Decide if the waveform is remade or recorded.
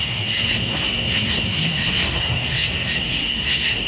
remade